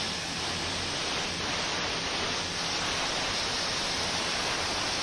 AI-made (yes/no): no